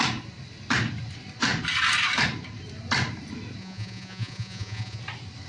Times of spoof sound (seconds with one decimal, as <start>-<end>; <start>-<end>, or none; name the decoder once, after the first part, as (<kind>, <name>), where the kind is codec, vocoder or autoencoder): 3.6-5.0 (vocoder, Vocos)